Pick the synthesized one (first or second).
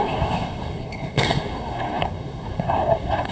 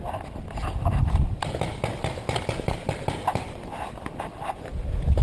first